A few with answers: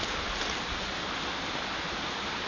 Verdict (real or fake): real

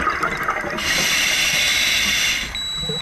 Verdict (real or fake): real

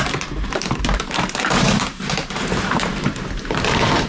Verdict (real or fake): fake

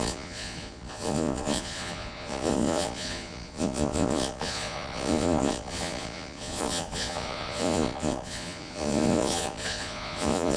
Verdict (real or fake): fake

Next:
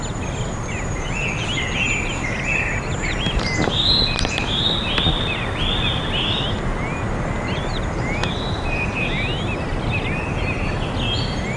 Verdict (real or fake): real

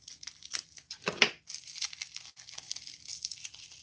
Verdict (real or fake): real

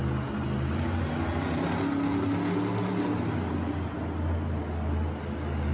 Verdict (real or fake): real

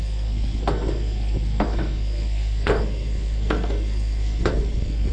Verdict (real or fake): fake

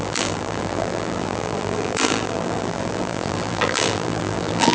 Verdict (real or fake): fake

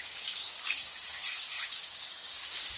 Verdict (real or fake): fake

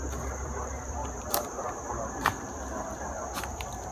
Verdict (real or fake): fake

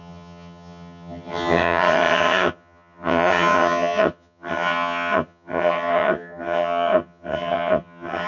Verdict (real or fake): fake